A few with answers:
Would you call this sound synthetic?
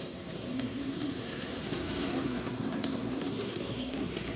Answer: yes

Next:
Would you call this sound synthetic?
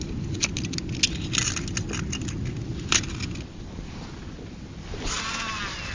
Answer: no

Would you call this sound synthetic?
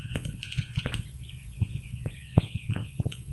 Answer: yes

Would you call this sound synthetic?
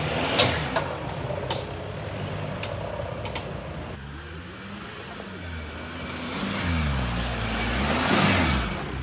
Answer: no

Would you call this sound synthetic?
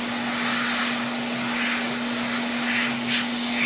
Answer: no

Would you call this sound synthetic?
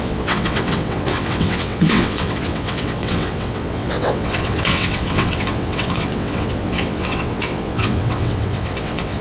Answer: yes